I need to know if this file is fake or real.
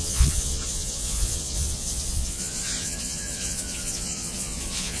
fake